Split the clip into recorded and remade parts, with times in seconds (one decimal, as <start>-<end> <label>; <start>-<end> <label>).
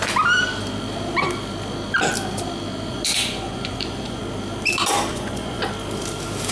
0.0-2.9 recorded; 2.9-4.2 remade; 4.2-5.1 recorded; 5.1-5.6 remade; 5.6-6.5 recorded